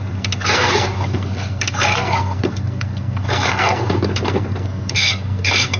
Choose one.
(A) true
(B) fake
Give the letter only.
B